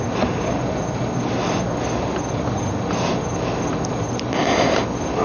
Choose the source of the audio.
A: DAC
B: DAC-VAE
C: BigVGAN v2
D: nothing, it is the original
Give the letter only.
D